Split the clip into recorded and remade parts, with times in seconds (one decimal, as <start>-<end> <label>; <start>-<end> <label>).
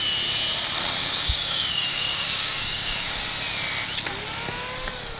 0.0-1.0 recorded; 1.0-3.2 remade; 3.2-5.2 recorded